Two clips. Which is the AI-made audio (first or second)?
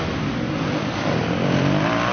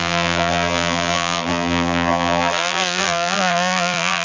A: second